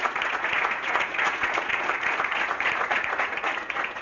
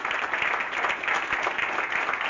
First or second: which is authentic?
second